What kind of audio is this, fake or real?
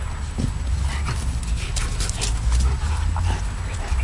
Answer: real